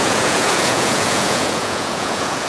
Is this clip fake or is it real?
fake